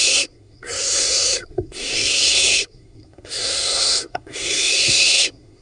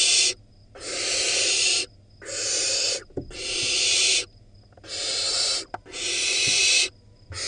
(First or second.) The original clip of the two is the second